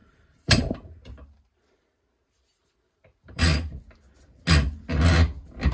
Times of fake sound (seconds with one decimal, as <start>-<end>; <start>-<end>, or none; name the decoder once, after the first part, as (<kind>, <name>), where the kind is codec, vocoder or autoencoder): 0.0-3.4 (vocoder, BigVGAN v2)